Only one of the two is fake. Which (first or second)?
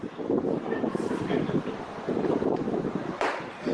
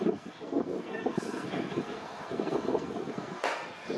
second